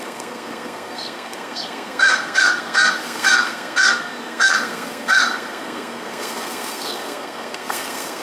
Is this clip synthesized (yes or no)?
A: yes